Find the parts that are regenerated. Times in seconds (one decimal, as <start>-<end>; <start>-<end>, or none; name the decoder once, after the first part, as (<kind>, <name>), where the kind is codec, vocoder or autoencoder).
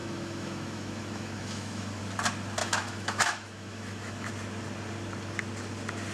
0.0-2.0 (autoencoder, DAC-VAE); 2.6-4.3